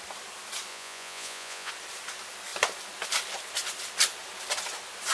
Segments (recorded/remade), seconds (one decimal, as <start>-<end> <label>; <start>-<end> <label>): 0.0-0.7 recorded; 0.7-1.7 remade; 1.7-5.1 recorded